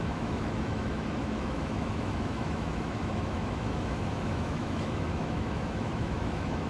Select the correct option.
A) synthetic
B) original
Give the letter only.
A